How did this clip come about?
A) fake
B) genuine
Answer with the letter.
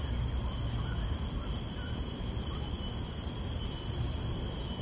A